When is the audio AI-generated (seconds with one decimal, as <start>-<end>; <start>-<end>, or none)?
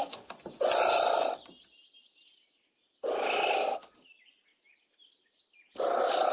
none